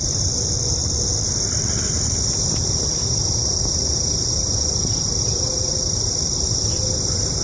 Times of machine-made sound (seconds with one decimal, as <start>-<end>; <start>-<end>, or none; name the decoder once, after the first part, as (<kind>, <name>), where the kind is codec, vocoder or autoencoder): none